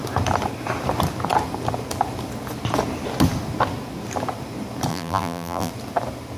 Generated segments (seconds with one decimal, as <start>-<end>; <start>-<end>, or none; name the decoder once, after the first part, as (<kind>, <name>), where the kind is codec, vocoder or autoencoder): 4.9-5.7 (vocoder, BigVGAN v2)